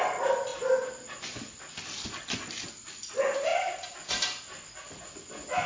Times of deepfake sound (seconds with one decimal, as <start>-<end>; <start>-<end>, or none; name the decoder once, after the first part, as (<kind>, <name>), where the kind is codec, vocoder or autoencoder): none